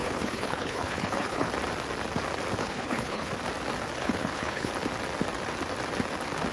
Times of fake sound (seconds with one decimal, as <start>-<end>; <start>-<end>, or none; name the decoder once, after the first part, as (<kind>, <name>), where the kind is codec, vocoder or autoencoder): 0.0-1.5 (codec, HILCodec); 2.6-3.3; 4.0-4.7